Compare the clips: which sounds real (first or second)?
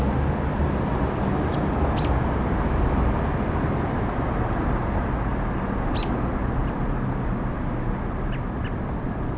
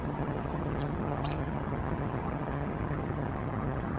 first